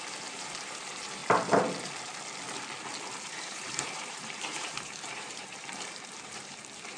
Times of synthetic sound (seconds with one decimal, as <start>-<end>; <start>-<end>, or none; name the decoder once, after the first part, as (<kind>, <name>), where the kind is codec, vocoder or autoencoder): 0.0-1.2 (vocoder, BigVGAN v2); 3.2-7.0